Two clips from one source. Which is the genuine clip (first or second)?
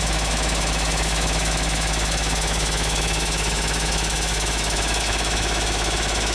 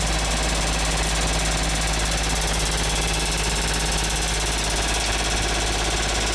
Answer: second